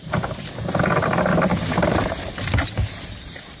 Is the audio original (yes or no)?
yes